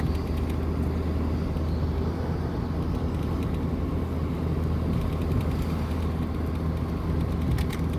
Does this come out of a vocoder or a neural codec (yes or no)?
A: no